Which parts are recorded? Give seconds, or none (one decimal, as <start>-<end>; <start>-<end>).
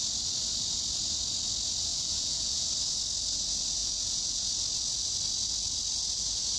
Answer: 0.0-1.9; 2.7-3.8; 4.5-6.6